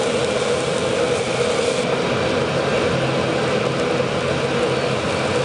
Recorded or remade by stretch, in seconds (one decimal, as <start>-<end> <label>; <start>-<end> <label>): 0.0-5.4 recorded